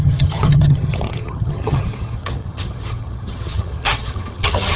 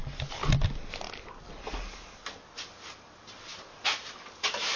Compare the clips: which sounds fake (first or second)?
first